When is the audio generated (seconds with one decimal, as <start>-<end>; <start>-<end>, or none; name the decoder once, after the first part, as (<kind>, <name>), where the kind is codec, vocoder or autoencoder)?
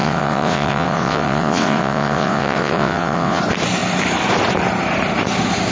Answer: 0.0-3.4 (vocoder, WaveNeXt)